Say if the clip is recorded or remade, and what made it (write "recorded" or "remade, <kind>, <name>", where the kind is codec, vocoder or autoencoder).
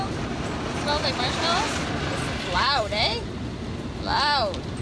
recorded